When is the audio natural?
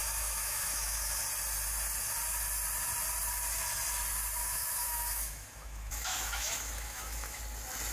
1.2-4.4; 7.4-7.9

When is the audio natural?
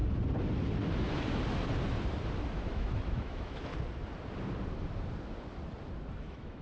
0.0-2.6; 3.7-6.1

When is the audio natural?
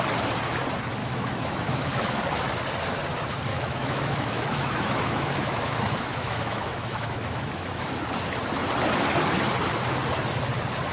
0.0-1.0; 2.2-3.5; 8.0-10.9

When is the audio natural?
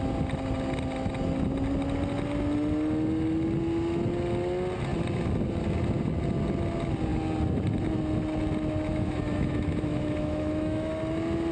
0.0-8.9; 10.9-11.5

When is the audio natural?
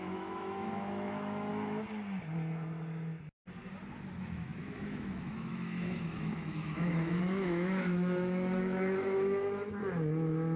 1.5-4.1; 9.8-10.6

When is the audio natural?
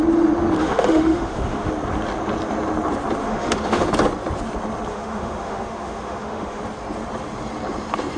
0.0-0.6; 1.7-3.2; 3.9-4.9; 6.6-8.2